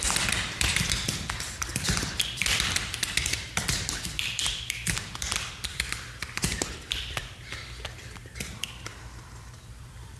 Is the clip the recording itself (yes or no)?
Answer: no